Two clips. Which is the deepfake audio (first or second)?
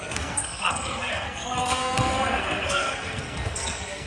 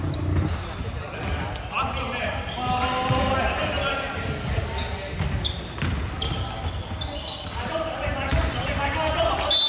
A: first